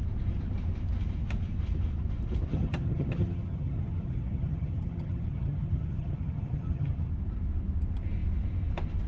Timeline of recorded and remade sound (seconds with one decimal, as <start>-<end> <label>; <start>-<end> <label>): 0.0-2.5 recorded; 2.5-7.1 remade; 7.1-9.1 recorded

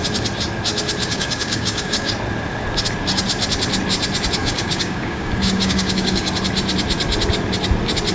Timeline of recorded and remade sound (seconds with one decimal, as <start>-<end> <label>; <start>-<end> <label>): 0.0-1.0 recorded; 1.0-2.1 remade; 2.1-4.4 recorded; 4.4-6.3 remade; 6.3-8.1 recorded